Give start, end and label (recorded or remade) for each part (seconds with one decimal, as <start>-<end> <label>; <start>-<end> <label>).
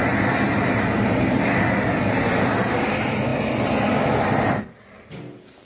0.0-5.7 recorded